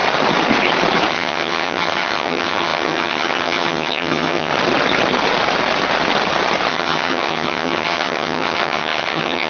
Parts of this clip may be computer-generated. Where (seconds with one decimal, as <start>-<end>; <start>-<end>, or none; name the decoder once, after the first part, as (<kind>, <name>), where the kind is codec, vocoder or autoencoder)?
1.1-4.5 (vocoder, HiFi-GAN); 6.7-9.5